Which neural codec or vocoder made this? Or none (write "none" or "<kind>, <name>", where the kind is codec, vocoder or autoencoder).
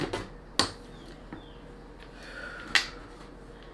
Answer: none